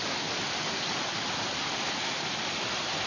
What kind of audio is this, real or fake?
real